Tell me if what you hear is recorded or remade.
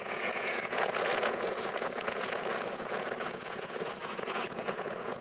remade